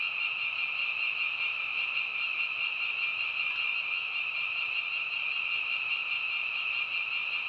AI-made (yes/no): no